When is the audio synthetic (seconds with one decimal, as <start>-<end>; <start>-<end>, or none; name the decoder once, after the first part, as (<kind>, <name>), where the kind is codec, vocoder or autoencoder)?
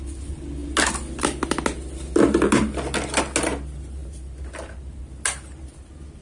none